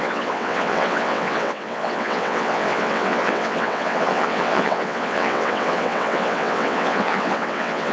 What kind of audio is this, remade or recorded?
remade